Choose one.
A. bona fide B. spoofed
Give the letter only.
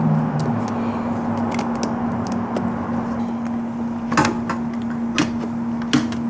A